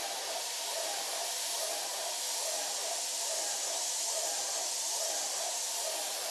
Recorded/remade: recorded